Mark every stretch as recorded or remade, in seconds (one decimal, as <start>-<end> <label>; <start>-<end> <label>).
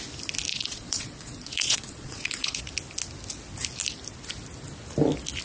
0.0-0.5 recorded; 0.5-2.6 remade; 2.6-5.4 recorded